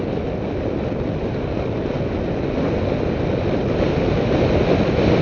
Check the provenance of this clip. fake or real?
real